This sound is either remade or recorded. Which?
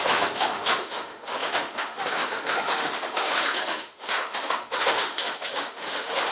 remade